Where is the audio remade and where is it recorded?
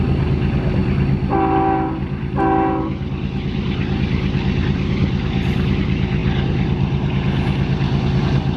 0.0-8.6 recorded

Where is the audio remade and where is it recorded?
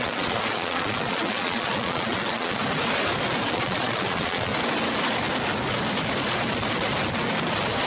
0.0-2.6 remade; 2.6-3.5 recorded; 3.5-4.5 remade; 4.5-7.9 recorded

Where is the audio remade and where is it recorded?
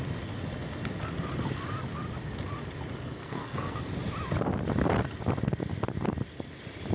0.0-3.2 recorded; 3.2-3.8 remade; 3.8-6.9 recorded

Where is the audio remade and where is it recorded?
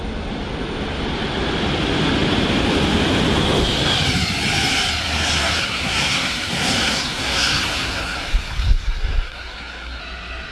0.0-5.0 recorded; 5.0-10.0 remade; 10.0-10.5 recorded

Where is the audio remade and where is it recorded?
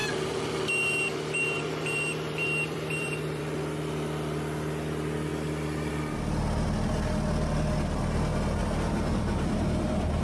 0.0-3.4 remade; 3.4-8.6 recorded; 8.6-10.2 remade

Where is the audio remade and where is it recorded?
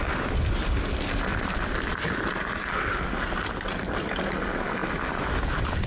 0.0-1.3 recorded; 1.3-2.4 remade; 2.4-5.9 recorded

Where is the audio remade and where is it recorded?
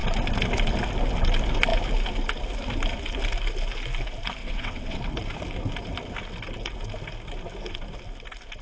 0.0-4.4 recorded; 4.4-5.0 remade; 5.0-8.6 recorded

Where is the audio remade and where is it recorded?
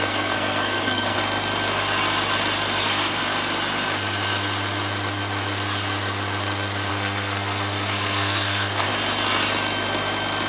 0.0-1.2 remade; 1.2-2.8 recorded; 2.8-3.2 remade; 3.2-6.9 recorded; 6.9-8.9 remade; 8.9-10.5 recorded